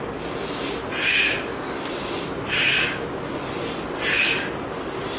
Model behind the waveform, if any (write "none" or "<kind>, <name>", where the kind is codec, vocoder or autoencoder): none